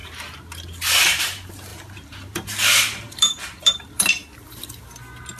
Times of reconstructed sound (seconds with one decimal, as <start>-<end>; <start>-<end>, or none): 1.1-4.2